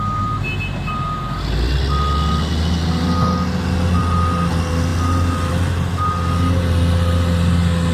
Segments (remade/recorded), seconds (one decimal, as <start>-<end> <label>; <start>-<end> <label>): 0.0-7.9 recorded